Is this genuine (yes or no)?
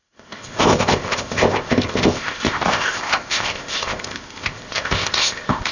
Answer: no